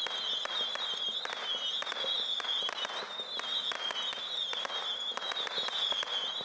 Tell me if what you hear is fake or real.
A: real